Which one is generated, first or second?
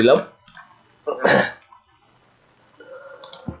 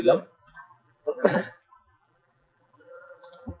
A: second